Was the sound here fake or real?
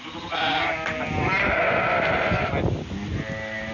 real